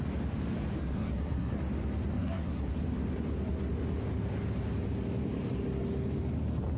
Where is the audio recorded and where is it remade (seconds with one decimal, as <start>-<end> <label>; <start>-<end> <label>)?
0.0-0.8 recorded; 0.8-1.6 remade; 1.6-2.1 recorded; 2.1-2.7 remade; 2.7-6.8 recorded